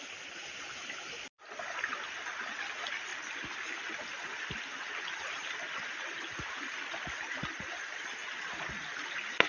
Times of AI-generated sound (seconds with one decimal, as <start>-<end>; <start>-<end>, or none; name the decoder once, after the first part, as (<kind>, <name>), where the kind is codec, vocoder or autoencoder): none